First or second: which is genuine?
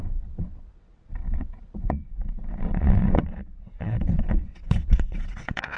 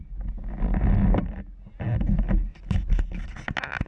second